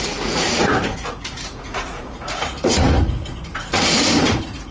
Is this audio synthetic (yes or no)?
yes